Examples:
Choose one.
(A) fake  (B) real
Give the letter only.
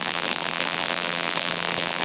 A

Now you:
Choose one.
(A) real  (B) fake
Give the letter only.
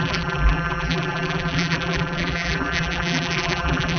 B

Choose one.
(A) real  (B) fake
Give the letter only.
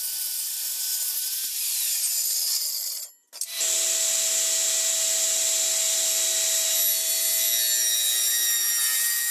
A